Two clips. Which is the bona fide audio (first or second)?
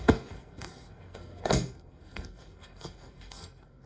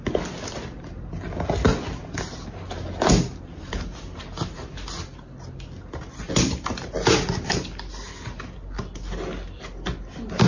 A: second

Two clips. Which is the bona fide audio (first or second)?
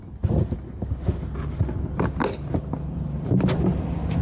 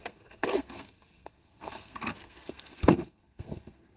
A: first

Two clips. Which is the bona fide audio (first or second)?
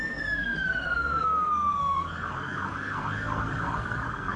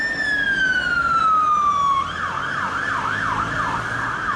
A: second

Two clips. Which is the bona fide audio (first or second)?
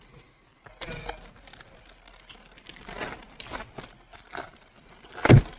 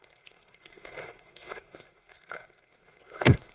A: first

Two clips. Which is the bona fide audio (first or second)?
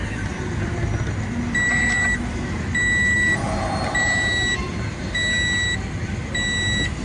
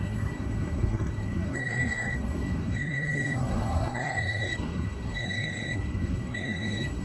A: first